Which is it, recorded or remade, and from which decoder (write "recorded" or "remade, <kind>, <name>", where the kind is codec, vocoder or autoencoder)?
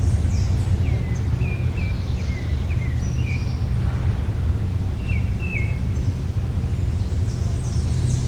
recorded